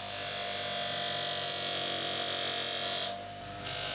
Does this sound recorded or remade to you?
recorded